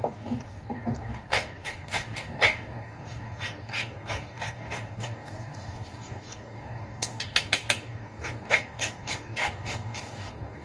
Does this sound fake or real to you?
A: fake